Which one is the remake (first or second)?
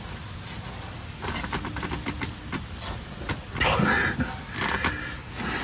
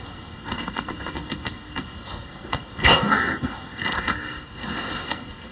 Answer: second